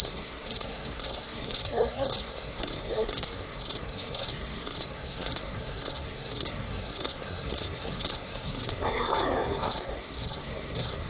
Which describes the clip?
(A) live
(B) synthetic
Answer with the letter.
B